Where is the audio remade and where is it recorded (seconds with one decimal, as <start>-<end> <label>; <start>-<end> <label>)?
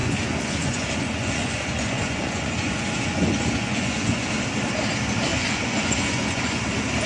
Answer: 0.0-4.3 remade; 4.3-5.3 recorded; 5.3-6.6 remade; 6.6-7.1 recorded